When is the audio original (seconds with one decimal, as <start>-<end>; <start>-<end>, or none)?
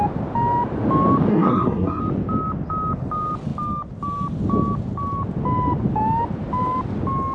0.0-1.3; 2.0-7.3